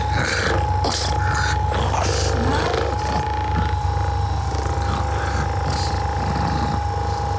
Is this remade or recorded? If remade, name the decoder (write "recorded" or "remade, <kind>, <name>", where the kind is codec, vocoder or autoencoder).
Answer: recorded